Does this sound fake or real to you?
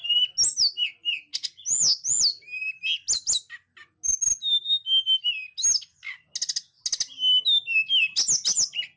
real